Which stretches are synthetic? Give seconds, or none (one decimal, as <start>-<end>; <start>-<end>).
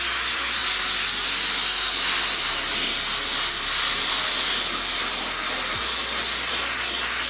none